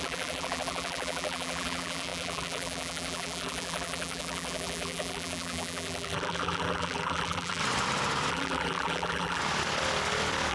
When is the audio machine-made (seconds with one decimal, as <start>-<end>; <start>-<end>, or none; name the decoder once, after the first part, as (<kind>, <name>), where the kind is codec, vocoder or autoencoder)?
0.0-7.6 (vocoder, BigVGAN v2); 8.3-9.4